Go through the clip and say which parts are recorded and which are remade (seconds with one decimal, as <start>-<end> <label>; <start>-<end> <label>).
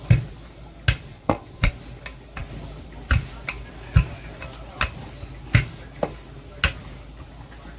0.0-1.1 recorded; 1.1-1.7 remade; 1.7-7.8 recorded